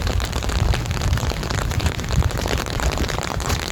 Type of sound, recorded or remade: remade